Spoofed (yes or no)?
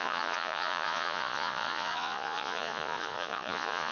yes